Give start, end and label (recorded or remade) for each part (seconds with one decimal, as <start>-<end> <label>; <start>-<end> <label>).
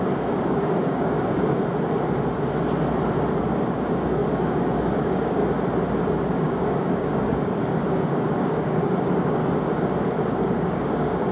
0.0-1.6 remade; 1.6-3.4 recorded; 3.4-5.4 remade; 5.4-6.1 recorded; 6.1-9.4 remade; 9.4-10.5 recorded; 10.5-11.3 remade